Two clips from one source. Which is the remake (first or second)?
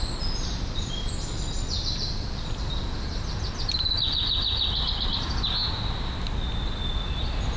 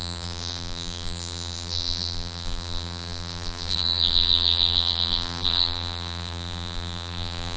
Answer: second